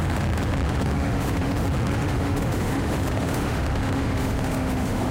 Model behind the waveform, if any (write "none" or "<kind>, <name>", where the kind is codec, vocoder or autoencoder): autoencoder, DAC-VAE